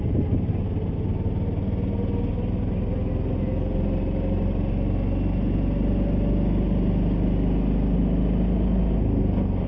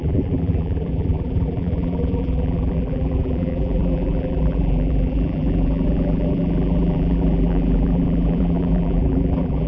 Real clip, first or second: first